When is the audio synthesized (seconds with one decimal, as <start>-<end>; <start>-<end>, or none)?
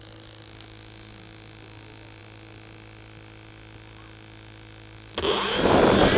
none